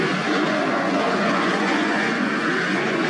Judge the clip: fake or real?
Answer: fake